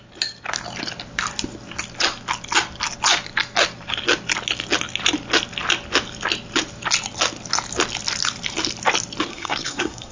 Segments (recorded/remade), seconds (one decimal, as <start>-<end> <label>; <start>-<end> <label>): 0.0-9.3 recorded; 9.3-10.1 remade